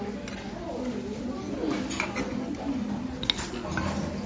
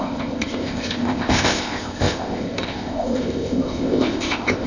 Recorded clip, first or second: first